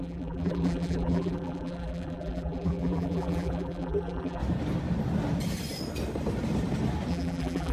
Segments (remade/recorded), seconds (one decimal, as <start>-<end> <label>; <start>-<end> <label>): 0.0-4.4 remade; 4.4-7.1 recorded; 7.1-7.7 remade